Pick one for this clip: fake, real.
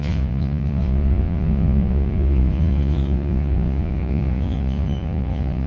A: fake